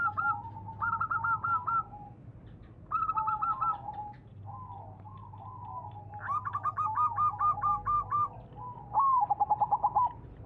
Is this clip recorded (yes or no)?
yes